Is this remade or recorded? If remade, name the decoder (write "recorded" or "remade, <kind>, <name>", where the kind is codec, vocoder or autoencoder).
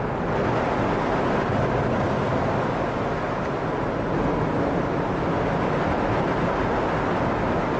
recorded